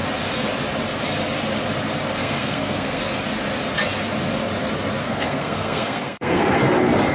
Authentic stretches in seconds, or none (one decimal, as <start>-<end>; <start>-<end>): 0.0-2.2; 3.0-5.0; 6.6-7.1